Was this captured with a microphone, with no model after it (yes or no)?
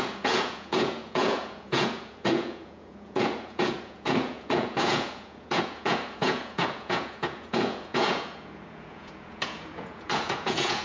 no